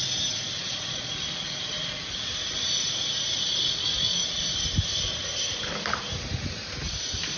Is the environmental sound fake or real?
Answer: real